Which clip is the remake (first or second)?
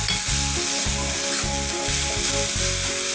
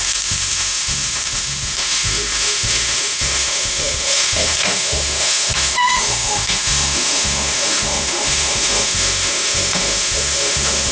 second